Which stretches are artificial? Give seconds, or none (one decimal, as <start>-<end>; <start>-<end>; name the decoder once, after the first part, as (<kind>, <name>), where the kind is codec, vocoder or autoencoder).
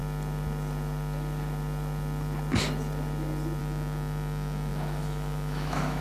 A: 3.6-6.0 (autoencoder, DAC-VAE)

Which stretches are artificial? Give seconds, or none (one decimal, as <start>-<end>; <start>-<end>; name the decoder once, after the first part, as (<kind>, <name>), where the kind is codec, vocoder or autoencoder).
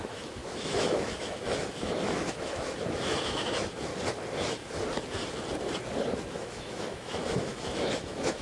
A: 0.0-3.9 (autoencoder, DAC-VAE); 6.3-8.4